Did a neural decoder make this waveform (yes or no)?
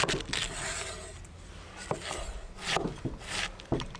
no